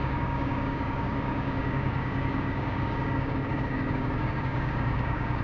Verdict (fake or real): fake